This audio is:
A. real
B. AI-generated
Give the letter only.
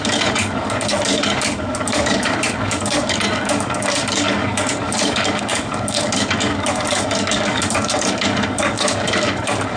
B